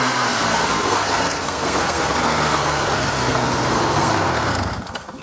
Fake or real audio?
fake